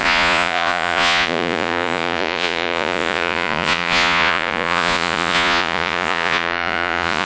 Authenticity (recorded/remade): remade